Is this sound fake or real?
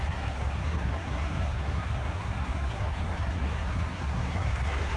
fake